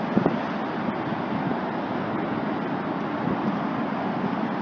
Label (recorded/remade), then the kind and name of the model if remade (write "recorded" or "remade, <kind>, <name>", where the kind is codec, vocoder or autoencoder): recorded